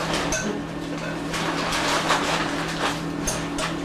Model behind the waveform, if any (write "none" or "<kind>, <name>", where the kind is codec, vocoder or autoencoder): none